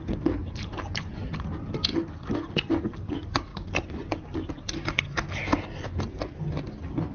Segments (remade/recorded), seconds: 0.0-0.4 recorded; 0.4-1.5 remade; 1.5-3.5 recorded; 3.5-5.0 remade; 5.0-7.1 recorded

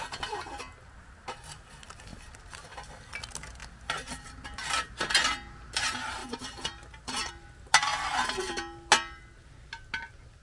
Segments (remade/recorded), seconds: 0.0-6.2 recorded; 6.2-7.3 remade; 7.3-10.4 recorded

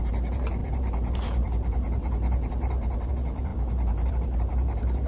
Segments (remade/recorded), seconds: 0.0-5.1 remade

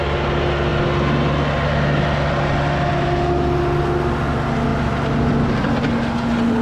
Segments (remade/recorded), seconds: 0.0-6.6 recorded

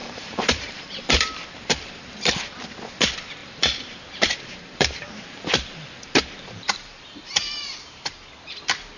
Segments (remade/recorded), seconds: 0.0-2.0 remade; 2.0-3.4 recorded; 3.4-8.1 remade; 8.1-9.0 recorded